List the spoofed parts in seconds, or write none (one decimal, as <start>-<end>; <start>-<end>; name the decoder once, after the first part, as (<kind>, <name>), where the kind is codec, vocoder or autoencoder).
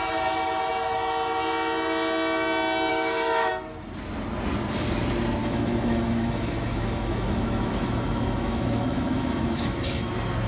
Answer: 2.9-3.5 (autoencoder, DAC-VAE); 5.4-10.1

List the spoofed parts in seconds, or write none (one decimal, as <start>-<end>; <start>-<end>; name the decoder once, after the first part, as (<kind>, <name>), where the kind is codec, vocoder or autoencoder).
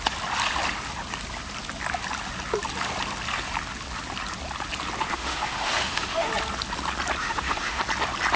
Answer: 5.1-6.3 (autoencoder, DAC-VAE); 7.2-7.8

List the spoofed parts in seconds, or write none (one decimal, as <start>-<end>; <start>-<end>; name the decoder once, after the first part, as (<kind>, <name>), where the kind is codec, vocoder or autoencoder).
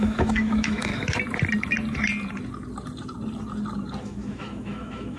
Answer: 0.0-0.9 (autoencoder, DAC-VAE); 4.0-5.2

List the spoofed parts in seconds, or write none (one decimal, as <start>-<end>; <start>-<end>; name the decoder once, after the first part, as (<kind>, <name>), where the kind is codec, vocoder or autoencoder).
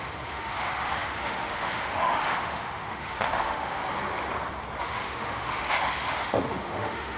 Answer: 0.0-3.8 (autoencoder, DAC-VAE); 4.8-7.2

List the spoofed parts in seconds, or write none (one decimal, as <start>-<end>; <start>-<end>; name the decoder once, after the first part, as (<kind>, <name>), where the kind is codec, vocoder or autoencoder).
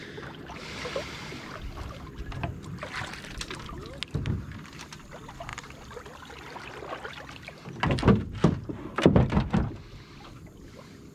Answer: none